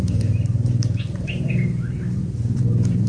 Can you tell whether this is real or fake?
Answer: fake